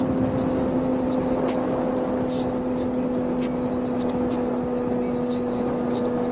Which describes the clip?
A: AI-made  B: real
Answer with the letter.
B